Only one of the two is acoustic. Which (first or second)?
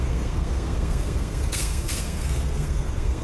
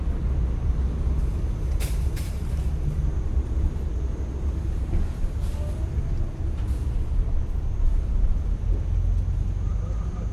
second